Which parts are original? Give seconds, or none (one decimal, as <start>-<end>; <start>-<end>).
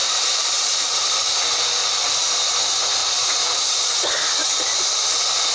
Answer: 0.7-3.0; 3.9-4.4; 5.1-5.5